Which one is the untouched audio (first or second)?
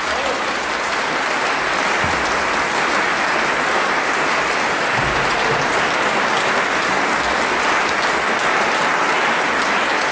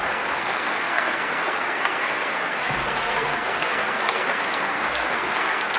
first